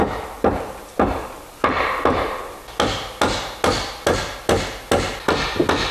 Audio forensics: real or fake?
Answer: real